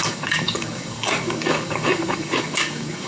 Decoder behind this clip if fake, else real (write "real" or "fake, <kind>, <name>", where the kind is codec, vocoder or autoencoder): fake, codec, DAC